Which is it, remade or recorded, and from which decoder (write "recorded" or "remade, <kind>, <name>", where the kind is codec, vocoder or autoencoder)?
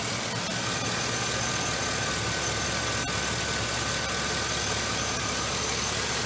recorded